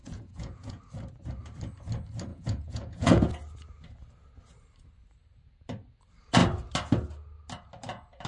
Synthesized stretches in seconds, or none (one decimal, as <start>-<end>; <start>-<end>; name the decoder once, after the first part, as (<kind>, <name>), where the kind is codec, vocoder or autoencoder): 0.0-0.8 (vocoder, Vocos); 2.3-3.3